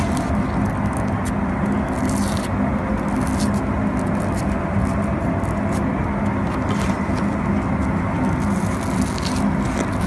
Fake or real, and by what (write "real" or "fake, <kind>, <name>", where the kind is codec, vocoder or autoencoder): real